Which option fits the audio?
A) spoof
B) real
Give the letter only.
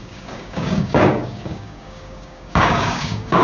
A